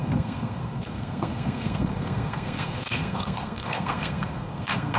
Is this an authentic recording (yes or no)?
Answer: no